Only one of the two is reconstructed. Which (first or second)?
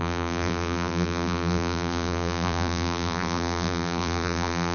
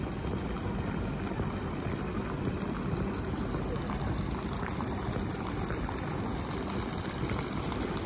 first